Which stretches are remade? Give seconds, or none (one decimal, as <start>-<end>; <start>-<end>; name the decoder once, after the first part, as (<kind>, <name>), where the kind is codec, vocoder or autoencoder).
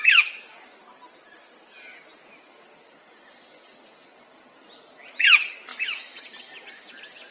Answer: 5.7-6.2 (autoencoder, DAC-VAE)